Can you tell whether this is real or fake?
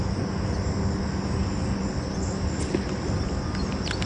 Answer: real